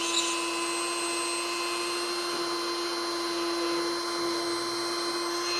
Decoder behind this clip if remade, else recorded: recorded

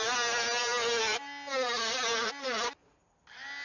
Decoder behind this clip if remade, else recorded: recorded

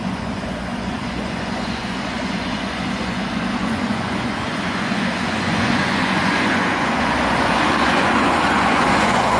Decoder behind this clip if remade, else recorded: remade, vocoder, Vocos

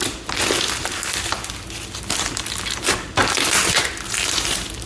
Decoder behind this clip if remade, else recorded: recorded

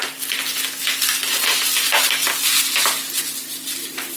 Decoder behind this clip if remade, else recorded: recorded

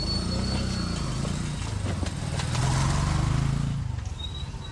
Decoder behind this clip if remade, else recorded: recorded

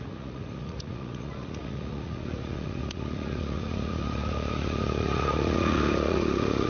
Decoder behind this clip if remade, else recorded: remade, vocoder, Vocos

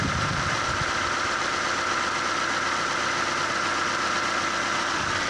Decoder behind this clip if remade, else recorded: recorded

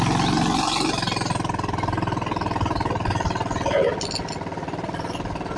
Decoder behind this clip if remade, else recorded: recorded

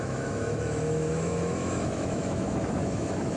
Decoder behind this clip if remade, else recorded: remade, autoencoder, DAC-VAE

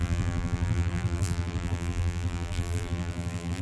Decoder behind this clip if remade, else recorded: remade, vocoder, BigVGAN v2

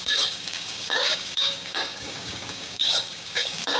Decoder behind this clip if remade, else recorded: remade, codec, DAC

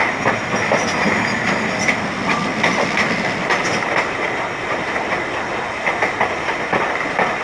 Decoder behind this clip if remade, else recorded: recorded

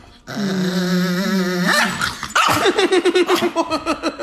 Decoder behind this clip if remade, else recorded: recorded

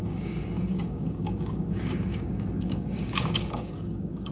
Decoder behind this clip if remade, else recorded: remade, codec, DAC